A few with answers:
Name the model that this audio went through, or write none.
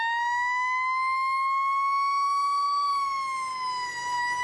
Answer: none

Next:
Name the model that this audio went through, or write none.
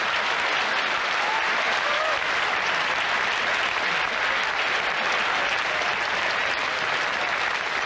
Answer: none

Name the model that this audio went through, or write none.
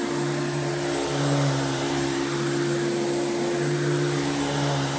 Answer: none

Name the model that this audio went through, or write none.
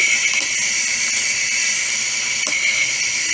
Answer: none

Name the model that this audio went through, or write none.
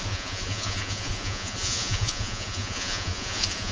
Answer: vocoder, Vocos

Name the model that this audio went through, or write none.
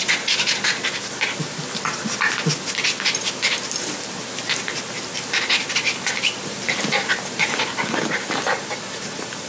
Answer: none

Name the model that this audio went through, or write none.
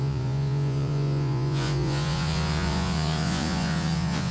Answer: vocoder, Vocos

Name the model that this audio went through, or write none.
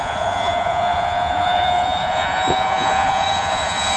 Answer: vocoder, Vocos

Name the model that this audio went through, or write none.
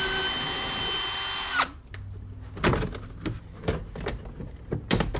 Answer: none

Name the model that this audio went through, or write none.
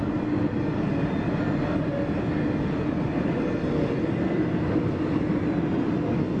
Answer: none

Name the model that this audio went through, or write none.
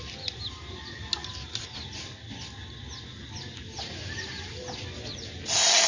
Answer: none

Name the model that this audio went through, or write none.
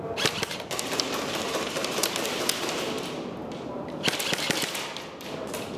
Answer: none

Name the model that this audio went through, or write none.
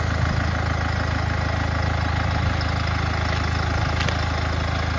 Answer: none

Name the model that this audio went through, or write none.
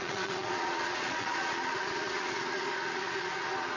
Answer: vocoder, Vocos